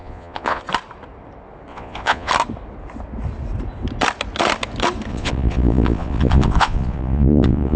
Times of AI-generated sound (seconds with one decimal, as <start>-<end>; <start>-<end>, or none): 0.0-0.6; 1.7-2.3; 5.1-7.8